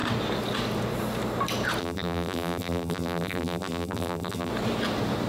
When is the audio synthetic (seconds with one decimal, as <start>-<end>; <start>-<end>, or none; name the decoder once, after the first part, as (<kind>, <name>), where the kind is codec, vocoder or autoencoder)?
1.8-4.5 (vocoder, BigVGAN v2)